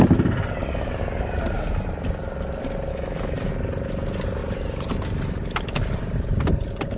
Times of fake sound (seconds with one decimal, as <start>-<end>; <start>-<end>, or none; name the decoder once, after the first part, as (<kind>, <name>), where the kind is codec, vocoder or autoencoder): 2.9-3.5 (autoencoder, DAC-VAE)